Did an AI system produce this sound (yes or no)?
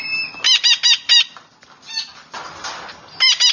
no